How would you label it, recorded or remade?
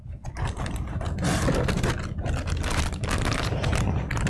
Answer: recorded